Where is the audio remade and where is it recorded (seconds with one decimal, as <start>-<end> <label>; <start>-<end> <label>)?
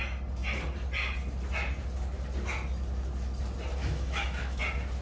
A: 0.0-3.8 recorded; 3.8-4.6 remade; 4.6-5.0 recorded